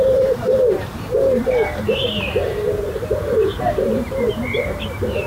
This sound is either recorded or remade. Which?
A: remade